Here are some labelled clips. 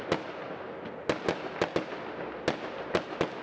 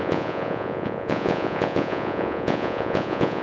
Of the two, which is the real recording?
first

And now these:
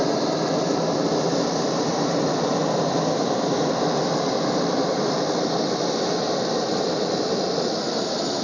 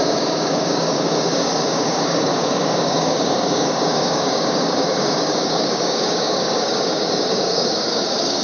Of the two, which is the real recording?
first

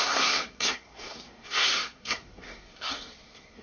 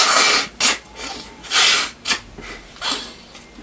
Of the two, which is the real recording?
second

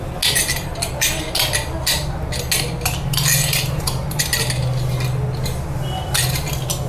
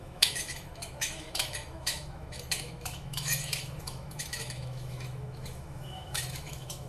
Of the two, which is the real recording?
first